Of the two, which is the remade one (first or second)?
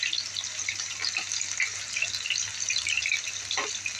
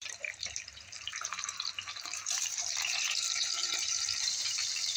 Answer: second